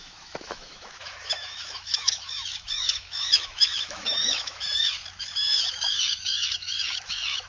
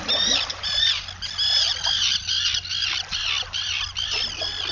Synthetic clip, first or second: first